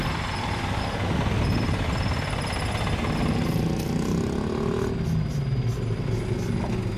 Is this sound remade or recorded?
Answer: recorded